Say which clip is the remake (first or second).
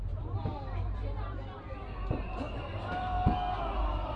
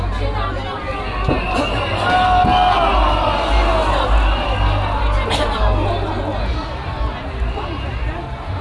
first